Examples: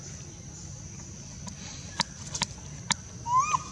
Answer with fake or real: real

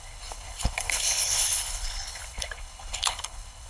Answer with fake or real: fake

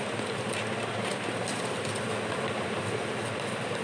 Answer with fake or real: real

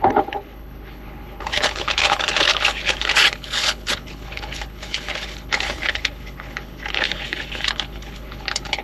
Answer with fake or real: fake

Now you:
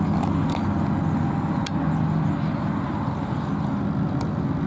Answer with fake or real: real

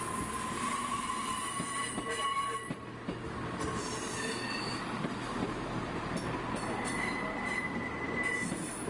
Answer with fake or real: real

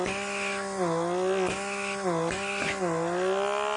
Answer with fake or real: real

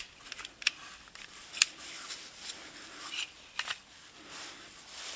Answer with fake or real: real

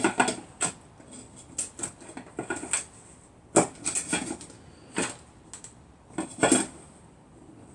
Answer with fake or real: real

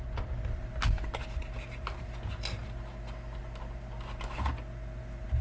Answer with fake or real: real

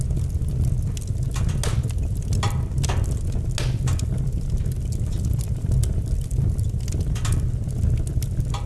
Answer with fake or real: real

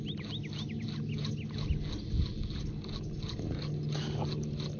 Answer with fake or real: real